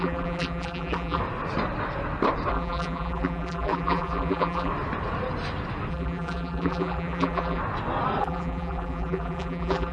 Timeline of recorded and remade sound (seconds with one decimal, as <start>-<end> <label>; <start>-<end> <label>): 0.0-1.2 remade; 1.2-2.5 recorded; 2.5-4.7 remade; 4.7-5.9 recorded; 5.9-7.6 remade; 7.6-8.2 recorded; 8.2-9.9 remade